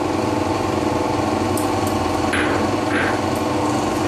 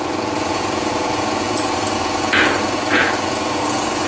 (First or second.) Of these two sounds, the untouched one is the first